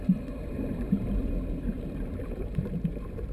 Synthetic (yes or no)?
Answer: yes